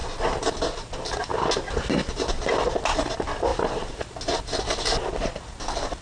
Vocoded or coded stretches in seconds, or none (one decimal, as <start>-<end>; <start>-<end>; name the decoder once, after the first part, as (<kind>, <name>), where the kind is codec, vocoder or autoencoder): none